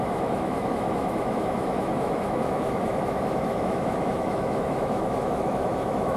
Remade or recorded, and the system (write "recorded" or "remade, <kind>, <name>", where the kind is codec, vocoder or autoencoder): remade, autoencoder, DAC-VAE